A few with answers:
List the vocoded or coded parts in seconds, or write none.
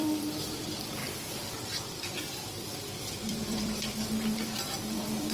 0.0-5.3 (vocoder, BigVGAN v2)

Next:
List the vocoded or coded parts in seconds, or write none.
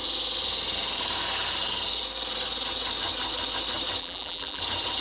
4.0-4.6 (vocoder, BigVGAN v2)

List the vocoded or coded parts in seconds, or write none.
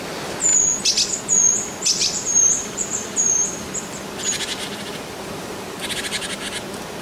2.0-5.5 (vocoder, BigVGAN v2)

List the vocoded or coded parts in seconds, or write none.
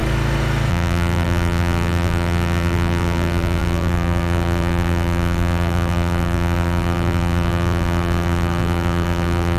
0.7-9.6 (vocoder, BigVGAN v2)